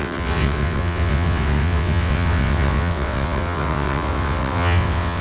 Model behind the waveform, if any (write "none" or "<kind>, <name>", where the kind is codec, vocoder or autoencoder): vocoder, WaveNeXt